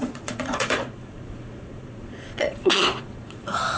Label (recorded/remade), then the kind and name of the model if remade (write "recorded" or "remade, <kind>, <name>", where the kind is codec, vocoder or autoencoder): remade, vocoder, Vocos